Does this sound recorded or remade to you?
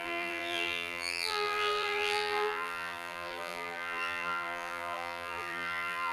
remade